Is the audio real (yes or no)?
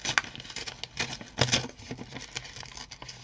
yes